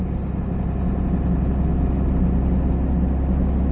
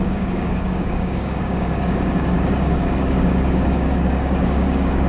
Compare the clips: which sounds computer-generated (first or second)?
second